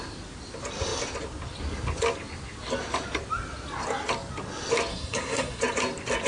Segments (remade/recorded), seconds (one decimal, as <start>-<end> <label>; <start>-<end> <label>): 0.0-4.9 recorded; 4.9-5.6 remade; 5.6-6.3 recorded